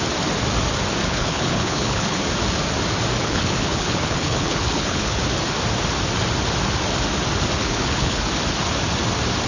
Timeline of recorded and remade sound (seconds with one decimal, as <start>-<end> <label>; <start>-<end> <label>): 0.0-1.0 recorded; 1.0-2.2 remade; 2.2-3.2 recorded; 3.2-5.2 remade; 5.2-7.6 recorded; 7.6-8.3 remade; 8.3-9.5 recorded